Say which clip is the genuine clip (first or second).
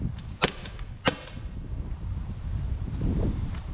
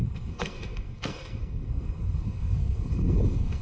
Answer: first